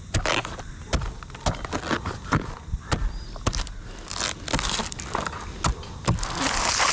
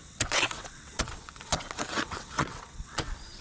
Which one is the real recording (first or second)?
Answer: first